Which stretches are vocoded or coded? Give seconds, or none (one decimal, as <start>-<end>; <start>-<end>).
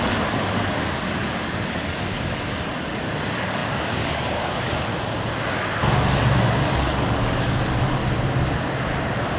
0.0-4.9; 6.5-8.0